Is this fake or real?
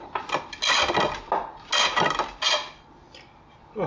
real